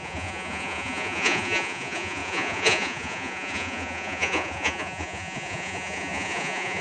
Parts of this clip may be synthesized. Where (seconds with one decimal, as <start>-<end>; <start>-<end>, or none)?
0.0-6.8